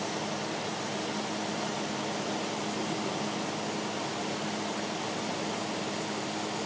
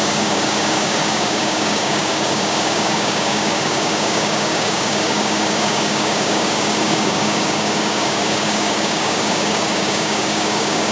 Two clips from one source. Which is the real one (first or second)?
first